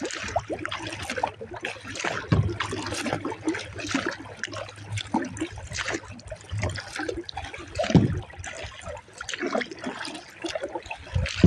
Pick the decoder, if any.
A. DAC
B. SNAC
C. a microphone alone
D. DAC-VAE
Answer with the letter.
C